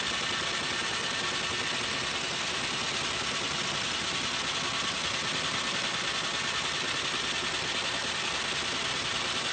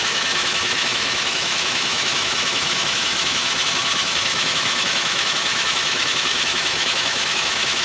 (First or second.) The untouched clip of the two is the first